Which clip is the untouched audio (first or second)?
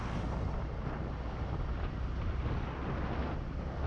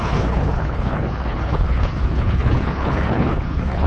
first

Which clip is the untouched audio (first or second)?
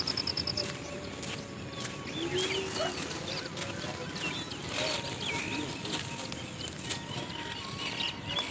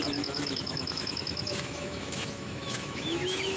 first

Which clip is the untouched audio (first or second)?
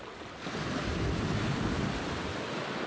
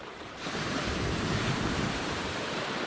first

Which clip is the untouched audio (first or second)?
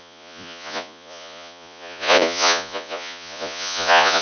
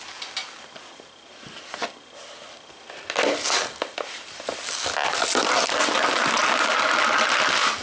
second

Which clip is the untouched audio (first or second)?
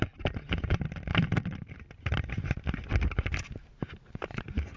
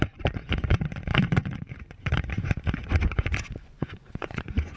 first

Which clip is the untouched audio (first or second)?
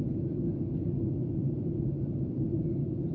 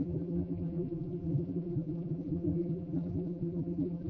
first